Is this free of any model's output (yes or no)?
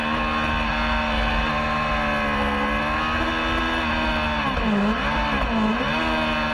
yes